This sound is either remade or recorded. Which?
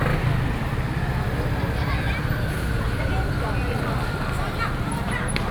recorded